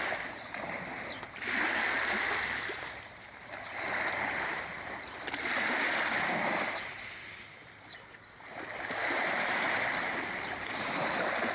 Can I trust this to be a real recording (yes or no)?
yes